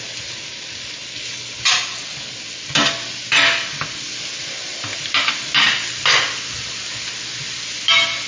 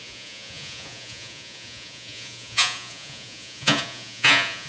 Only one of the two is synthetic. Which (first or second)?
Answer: second